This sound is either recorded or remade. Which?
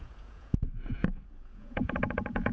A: remade